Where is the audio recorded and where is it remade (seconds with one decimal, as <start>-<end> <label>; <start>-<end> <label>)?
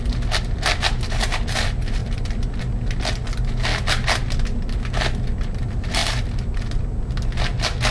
0.0-7.9 recorded